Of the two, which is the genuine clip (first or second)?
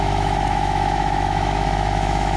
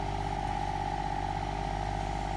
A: second